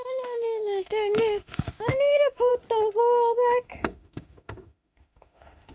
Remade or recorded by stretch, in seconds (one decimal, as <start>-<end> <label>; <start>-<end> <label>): 0.0-2.5 remade; 2.5-3.0 recorded; 3.0-5.7 remade